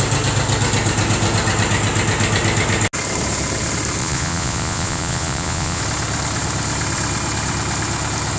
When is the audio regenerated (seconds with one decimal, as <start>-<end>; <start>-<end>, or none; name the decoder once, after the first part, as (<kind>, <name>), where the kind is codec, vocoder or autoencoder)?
4.0-5.8 (vocoder, Vocos)